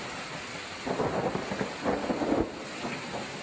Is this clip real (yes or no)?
yes